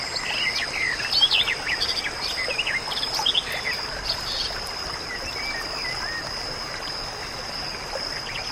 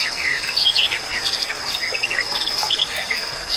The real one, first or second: first